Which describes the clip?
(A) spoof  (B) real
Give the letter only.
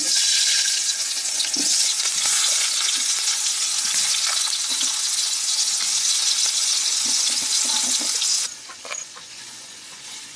A